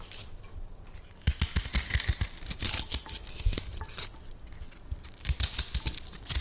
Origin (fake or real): real